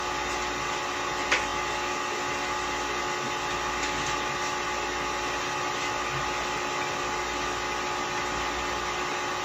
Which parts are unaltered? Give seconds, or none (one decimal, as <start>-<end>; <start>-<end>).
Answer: 0.0-9.4